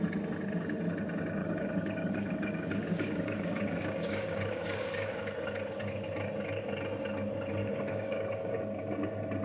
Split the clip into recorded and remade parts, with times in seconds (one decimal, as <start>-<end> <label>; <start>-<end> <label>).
0.0-1.4 recorded; 1.4-5.2 remade; 5.2-7.6 recorded; 7.6-8.6 remade; 8.6-9.4 recorded